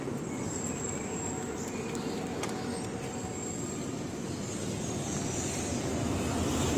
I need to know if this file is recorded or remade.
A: recorded